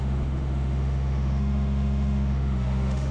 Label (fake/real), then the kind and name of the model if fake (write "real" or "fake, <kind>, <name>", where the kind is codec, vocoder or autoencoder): fake, autoencoder, DAC-VAE